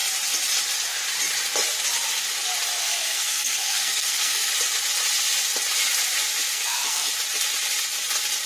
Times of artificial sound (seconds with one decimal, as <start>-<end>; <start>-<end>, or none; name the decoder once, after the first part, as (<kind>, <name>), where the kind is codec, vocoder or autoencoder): 2.8-4.5 (codec, SNAC); 6.5-7.1